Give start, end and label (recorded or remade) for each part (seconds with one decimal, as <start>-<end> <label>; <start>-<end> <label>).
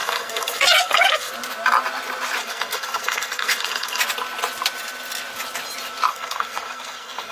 0.0-1.3 remade; 1.3-2.4 recorded; 2.4-4.0 remade; 4.0-6.1 recorded; 6.1-7.3 remade